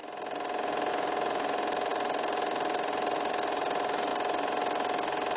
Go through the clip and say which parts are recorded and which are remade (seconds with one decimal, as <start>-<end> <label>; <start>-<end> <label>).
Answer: 0.0-5.4 recorded